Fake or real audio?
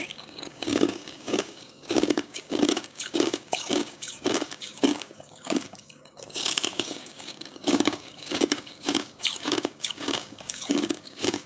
fake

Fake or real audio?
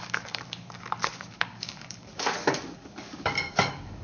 fake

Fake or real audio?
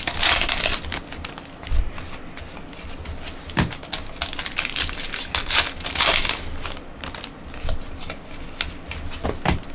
real